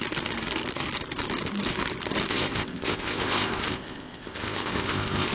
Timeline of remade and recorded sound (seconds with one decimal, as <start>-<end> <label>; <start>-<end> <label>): 0.0-2.3 recorded; 2.3-5.3 remade